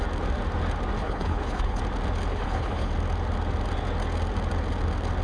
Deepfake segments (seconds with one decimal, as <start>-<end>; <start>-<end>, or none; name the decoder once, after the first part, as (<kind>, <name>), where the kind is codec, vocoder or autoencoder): 1.0-1.8 (codec, HILCodec); 2.3-2.9